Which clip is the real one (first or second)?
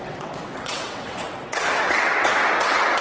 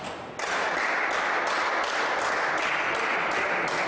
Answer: second